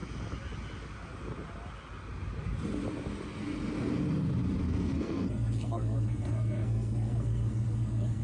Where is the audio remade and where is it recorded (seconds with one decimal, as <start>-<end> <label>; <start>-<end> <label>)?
0.0-4.6 recorded; 4.6-8.2 remade